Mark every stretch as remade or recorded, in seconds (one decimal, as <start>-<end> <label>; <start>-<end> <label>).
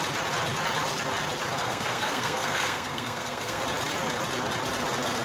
0.0-1.6 recorded; 1.6-3.6 remade; 3.6-5.2 recorded